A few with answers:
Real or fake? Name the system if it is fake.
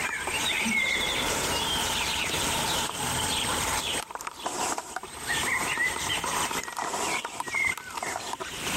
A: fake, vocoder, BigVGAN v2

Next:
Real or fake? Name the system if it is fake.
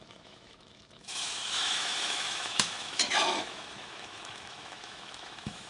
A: fake, autoencoder, DAC-VAE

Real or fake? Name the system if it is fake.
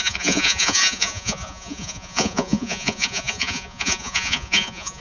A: fake, vocoder, Vocos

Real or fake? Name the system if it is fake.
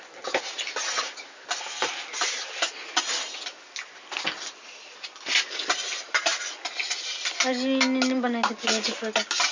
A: real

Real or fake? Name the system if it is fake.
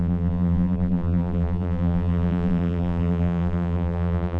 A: fake, vocoder, BigVGAN v2